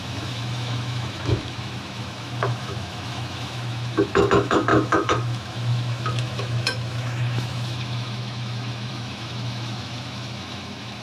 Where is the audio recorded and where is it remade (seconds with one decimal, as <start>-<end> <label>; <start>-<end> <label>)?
0.0-11.0 remade